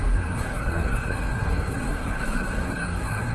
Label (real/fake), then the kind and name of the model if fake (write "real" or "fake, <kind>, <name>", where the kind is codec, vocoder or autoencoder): fake, codec, SNAC